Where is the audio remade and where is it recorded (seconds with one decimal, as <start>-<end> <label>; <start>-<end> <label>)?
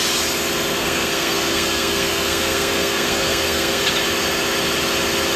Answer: 0.0-0.7 recorded; 0.7-3.9 remade; 3.9-5.4 recorded